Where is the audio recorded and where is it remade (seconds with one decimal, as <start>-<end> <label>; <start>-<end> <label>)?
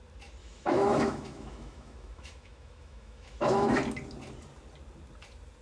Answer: 0.0-0.4 recorded; 0.4-3.8 remade; 3.8-5.6 recorded